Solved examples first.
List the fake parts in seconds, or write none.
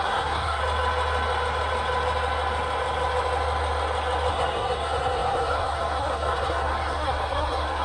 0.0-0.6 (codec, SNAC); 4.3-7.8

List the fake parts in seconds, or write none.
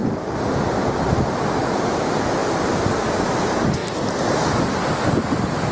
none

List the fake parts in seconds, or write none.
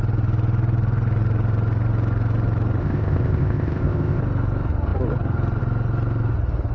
2.8-4.2 (codec, ZipCodec)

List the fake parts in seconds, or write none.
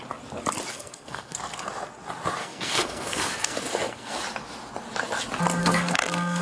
0.7-1.4 (codec, SNAC); 2.4-4.2; 5.6-6.4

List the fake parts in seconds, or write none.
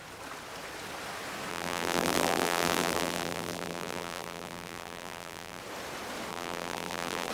1.5-5.6 (vocoder, BigVGAN v2); 6.3-7.3